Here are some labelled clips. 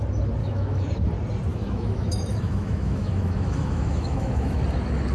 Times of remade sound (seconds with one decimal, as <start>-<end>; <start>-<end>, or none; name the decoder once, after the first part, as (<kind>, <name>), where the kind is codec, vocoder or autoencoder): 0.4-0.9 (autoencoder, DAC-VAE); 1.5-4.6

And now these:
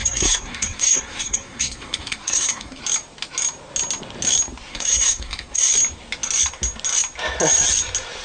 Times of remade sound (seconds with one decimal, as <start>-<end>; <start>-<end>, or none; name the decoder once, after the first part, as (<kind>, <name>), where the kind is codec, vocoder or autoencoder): 0.0-2.8 (codec, SNAC); 4.7-5.7

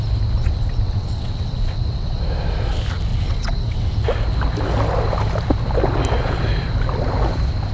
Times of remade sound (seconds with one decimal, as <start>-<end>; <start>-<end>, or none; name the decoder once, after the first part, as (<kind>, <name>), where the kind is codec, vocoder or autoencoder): 0.4-2.2 (vocoder, WaveNeXt); 3.1-3.9

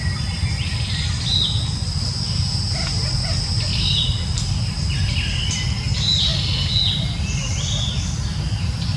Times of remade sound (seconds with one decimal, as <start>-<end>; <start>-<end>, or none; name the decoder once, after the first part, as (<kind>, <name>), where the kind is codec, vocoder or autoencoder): none

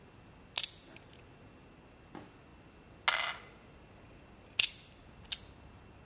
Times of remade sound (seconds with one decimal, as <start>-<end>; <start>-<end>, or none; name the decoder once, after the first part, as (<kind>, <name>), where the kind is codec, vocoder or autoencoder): none

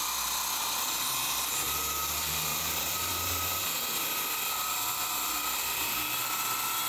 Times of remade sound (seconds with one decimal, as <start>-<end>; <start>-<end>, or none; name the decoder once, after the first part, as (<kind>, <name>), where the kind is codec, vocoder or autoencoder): 2.5-6.2 (vocoder, BigVGAN v2)

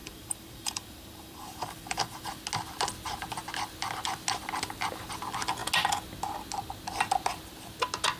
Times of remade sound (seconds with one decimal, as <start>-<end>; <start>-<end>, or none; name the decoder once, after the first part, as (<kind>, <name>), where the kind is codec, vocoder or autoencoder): 0.0-2.4 (vocoder, BigVGAN v2)

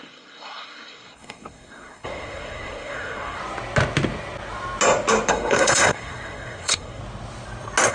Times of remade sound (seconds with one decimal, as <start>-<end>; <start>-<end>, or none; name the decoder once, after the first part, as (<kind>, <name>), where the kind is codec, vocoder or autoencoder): 0.0-3.4 (codec, SNAC); 5.3-7.0